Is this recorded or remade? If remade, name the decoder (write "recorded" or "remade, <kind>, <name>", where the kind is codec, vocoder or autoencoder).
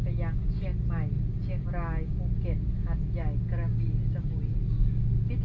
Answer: recorded